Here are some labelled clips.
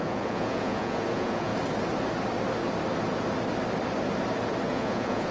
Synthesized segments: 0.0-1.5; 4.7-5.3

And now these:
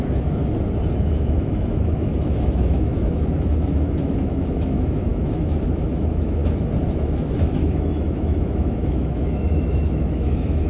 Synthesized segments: 0.0-0.4; 1.0-6.4; 6.9-10.7